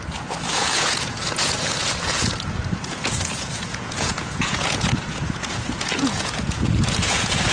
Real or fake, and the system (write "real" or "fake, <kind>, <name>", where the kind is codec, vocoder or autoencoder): fake, vocoder, Vocos